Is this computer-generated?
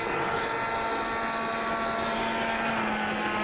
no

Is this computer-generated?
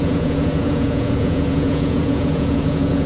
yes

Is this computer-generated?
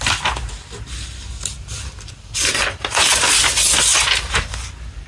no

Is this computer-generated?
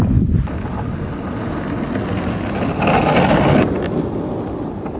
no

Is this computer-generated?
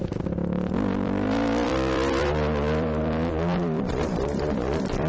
yes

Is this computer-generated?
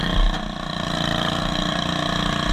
no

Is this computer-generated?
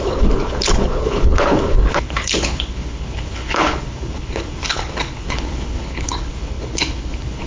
yes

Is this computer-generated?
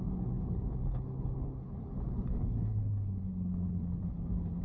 yes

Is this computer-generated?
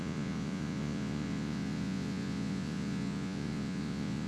yes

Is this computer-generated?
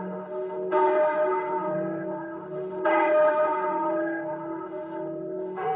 yes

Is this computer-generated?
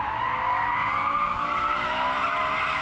no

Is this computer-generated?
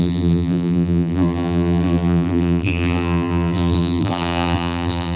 yes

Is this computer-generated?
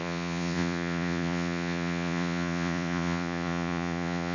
yes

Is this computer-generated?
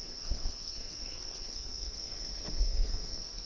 yes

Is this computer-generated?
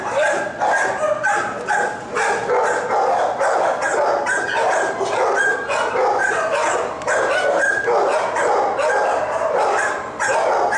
no